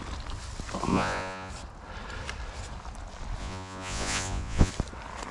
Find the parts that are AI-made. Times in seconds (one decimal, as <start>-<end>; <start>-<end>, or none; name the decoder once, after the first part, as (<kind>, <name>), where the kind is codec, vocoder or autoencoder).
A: 0.9-1.5 (vocoder, Vocos); 3.4-4.7